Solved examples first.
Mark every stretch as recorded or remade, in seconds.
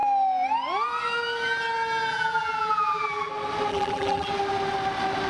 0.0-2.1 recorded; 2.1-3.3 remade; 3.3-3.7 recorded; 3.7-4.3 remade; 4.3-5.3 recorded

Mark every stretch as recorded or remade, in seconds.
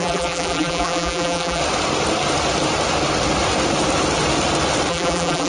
0.0-1.6 remade; 1.6-4.9 recorded; 4.9-5.5 remade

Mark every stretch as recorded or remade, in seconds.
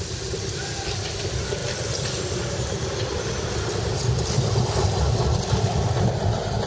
0.0-6.7 recorded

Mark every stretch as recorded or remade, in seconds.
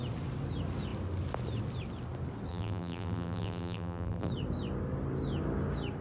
0.0-2.5 recorded; 2.5-4.3 remade; 4.3-6.0 recorded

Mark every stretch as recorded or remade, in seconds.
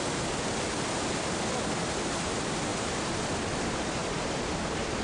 0.0-2.7 recorded; 2.7-3.2 remade; 3.2-4.0 recorded; 4.0-5.0 remade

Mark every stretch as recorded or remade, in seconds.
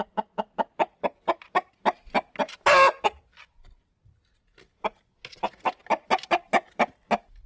0.0-7.5 recorded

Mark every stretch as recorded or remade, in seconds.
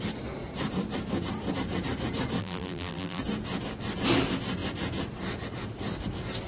0.0-2.4 recorded; 2.4-3.2 remade; 3.2-6.5 recorded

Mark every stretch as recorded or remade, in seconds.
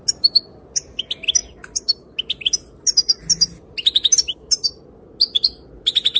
0.0-6.2 recorded